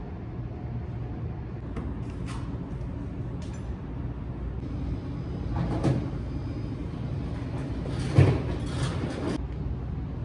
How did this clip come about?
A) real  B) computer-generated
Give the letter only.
A